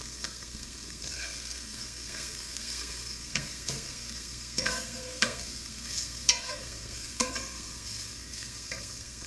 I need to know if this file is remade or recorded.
remade